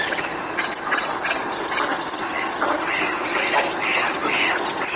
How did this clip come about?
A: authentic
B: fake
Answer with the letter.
A